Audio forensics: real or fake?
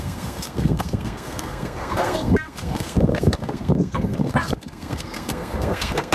fake